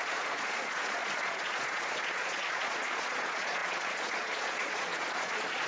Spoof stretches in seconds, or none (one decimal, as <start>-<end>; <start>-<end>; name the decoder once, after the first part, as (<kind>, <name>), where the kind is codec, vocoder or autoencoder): 0.0-5.7 (vocoder, Vocos)